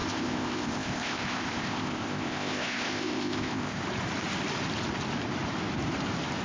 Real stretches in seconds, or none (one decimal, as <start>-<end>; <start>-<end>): 3.8-6.4